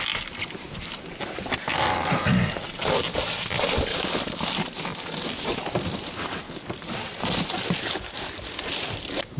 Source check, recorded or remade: recorded